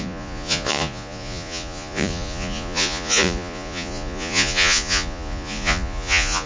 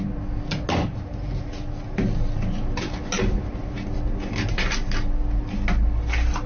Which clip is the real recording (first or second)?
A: second